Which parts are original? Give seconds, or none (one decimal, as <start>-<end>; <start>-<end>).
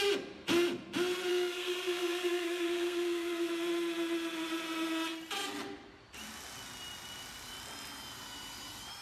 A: 0.0-1.3; 3.5-9.0